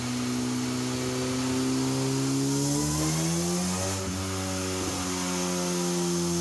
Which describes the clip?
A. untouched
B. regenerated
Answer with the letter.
A